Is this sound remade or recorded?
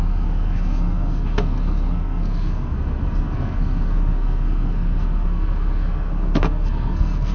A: remade